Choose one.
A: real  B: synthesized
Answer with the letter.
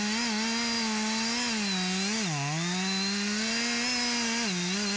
A